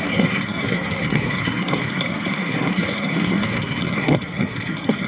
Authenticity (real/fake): fake